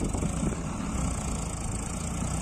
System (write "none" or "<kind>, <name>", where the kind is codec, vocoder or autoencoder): none